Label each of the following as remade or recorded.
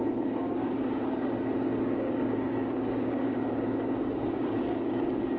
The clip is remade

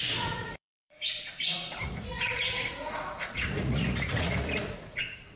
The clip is remade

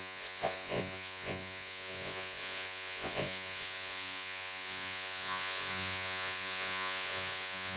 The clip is remade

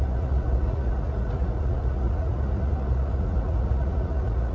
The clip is remade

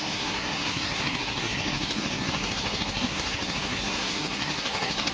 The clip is remade